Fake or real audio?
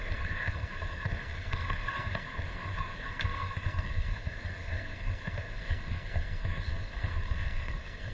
fake